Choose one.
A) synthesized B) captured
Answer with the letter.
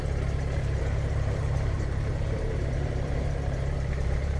A